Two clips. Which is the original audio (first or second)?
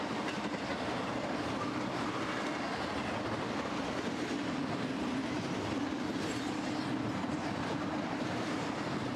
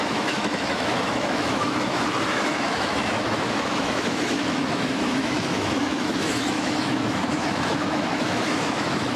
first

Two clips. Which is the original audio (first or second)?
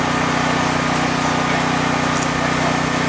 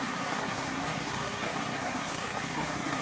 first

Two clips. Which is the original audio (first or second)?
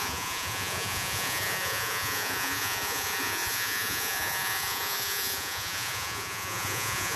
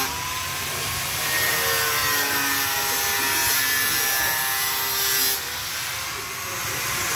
second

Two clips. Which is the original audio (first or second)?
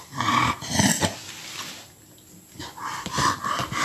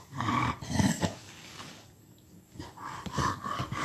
first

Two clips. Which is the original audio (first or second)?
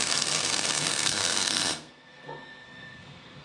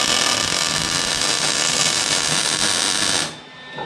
second